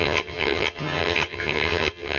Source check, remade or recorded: remade